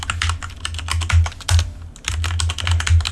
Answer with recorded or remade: recorded